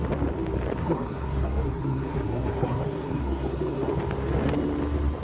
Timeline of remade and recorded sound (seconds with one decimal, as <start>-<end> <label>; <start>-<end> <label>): 0.0-0.8 recorded; 0.8-3.9 remade; 3.9-5.2 recorded